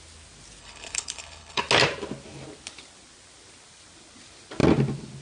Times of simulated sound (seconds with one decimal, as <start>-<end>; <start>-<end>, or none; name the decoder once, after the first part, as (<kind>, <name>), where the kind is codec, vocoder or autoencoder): 0.6-1.6 (codec, HILCodec)